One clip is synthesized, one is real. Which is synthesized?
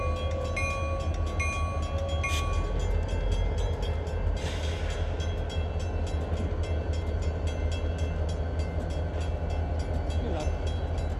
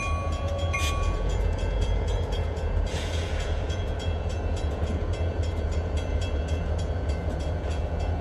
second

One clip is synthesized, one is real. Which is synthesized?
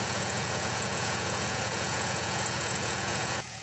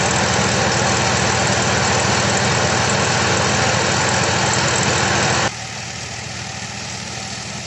first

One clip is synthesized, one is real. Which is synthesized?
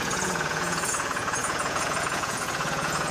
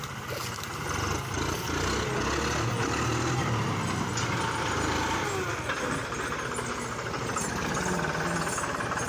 first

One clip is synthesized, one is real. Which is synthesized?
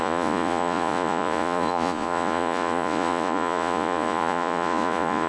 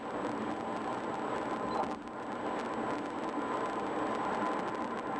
first